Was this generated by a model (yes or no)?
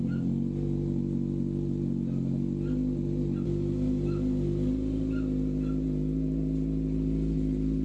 no